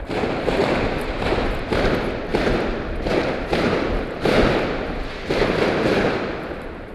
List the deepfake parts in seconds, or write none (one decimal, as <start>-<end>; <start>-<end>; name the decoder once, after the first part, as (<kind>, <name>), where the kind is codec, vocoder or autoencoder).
0.6-1.3 (vocoder, BigVGAN v2)